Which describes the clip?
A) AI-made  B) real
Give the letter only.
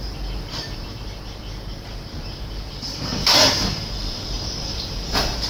A